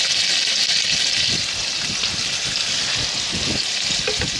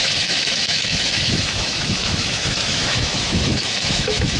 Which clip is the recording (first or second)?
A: first